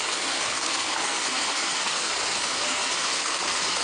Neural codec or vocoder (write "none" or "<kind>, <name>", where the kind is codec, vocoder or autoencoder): codec, SNAC